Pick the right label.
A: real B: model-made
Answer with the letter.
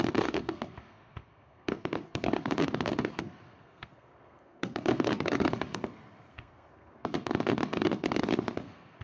B